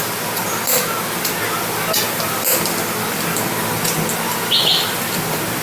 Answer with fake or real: real